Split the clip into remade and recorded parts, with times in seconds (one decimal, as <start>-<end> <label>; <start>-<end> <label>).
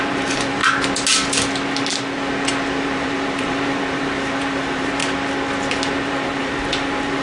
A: 0.0-0.6 remade; 0.6-2.8 recorded; 2.8-5.0 remade; 5.0-6.1 recorded; 6.1-7.2 remade